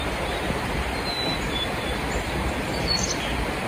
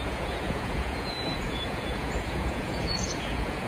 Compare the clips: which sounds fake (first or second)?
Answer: second